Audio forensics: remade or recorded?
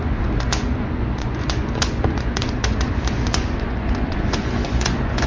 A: remade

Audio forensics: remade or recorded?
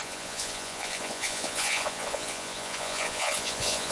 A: remade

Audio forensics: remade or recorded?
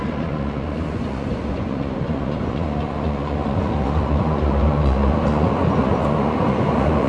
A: remade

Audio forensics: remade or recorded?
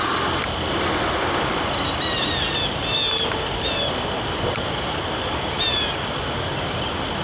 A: recorded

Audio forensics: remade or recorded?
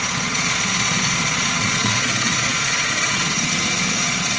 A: remade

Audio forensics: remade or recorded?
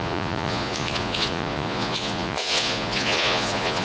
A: remade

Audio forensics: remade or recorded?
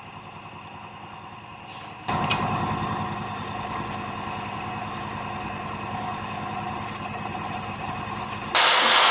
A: recorded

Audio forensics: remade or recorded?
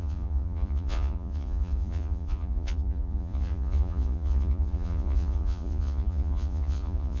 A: remade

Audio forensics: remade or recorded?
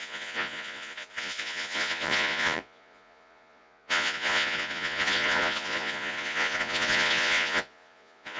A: remade